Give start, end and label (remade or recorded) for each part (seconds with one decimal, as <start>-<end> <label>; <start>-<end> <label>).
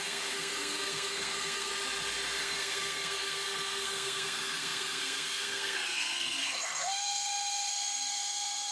0.0-1.7 remade; 1.7-2.4 recorded; 2.4-8.7 remade